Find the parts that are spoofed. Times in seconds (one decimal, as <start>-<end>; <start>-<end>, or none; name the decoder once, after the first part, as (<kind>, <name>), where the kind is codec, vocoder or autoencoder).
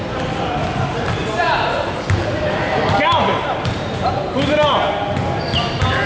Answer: 1.2-4.9 (vocoder, BigVGAN v2)